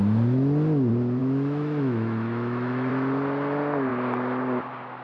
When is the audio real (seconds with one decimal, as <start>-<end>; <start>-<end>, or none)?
0.0-1.2; 2.9-5.0